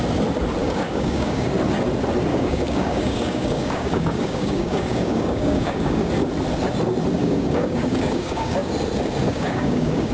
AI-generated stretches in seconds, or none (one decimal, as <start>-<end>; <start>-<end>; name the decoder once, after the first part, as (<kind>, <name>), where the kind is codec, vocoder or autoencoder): 0.6-1.5 (codec, DAC); 2.3-6.1; 7.2-8.7; 9.3-10.1